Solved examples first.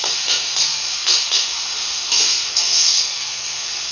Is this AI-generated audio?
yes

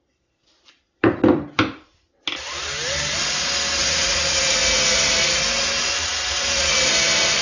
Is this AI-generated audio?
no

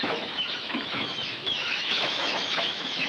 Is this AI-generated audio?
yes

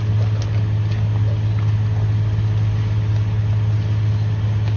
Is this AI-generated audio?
no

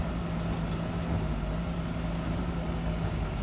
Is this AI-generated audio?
no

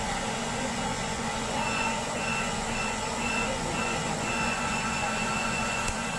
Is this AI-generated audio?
yes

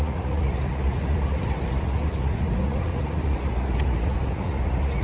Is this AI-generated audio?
yes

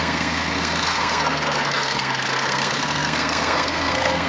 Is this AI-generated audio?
yes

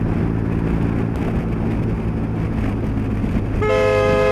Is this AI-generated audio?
no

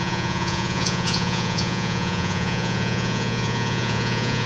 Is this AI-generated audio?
yes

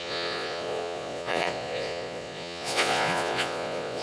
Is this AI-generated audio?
yes